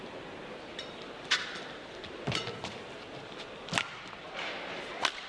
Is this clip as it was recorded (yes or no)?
yes